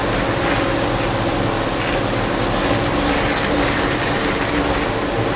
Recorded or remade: recorded